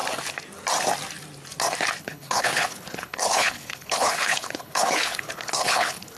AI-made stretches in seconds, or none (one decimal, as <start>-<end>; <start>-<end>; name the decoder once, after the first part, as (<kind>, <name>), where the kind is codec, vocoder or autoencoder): 2.0-6.2 (codec, HILCodec)